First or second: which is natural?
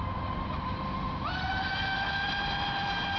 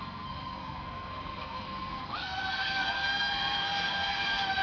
first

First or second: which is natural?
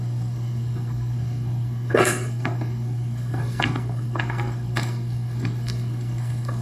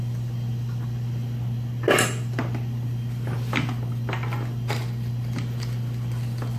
second